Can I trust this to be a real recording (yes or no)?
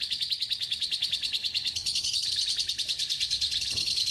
no